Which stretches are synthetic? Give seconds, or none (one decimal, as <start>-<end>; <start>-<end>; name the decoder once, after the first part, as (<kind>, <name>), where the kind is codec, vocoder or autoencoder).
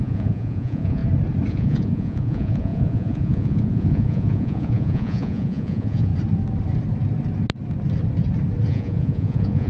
0.0-1.0 (vocoder, Vocos); 1.5-6.1; 8.7-9.7